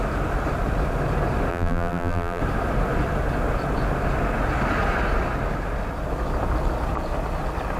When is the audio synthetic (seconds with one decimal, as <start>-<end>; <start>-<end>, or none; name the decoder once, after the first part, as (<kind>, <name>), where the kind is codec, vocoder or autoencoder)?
1.5-2.4 (vocoder, BigVGAN v2)